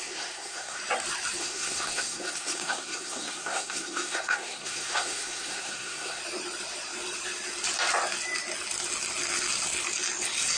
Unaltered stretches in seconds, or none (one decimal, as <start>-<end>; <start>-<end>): 0.8-1.4; 6.2-10.6